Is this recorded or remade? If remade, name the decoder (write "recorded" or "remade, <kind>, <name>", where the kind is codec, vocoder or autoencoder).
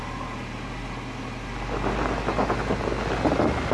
recorded